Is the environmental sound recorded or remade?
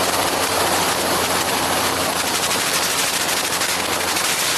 recorded